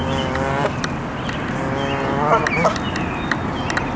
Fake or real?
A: real